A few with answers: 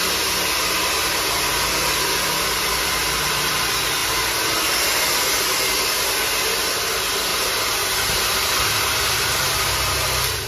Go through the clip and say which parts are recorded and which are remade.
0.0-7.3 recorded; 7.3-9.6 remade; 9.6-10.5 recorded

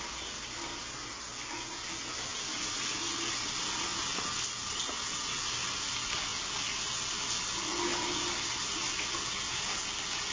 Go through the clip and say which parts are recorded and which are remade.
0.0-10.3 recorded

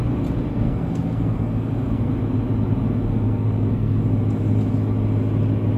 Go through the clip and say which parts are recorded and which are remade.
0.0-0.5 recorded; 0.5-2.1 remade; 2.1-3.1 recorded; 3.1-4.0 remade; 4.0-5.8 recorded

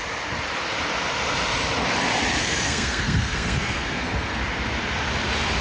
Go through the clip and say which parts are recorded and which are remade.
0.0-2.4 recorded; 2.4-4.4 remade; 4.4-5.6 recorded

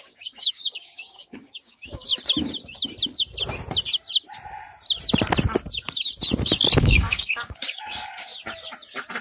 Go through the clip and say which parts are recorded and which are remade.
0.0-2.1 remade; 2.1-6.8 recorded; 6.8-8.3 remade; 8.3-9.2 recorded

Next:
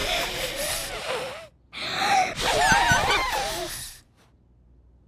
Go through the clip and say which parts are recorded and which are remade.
0.0-5.1 recorded

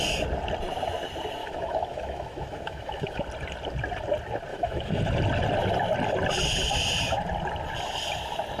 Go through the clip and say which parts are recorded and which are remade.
0.0-1.4 recorded; 1.4-3.2 remade; 3.2-4.5 recorded; 4.5-5.0 remade; 5.0-8.6 recorded